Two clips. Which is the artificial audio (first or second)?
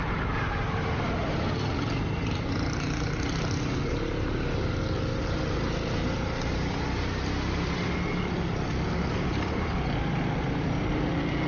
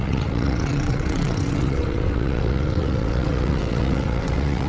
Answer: second